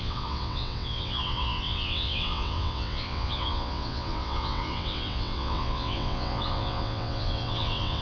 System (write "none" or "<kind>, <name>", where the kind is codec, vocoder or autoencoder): vocoder, WaveNeXt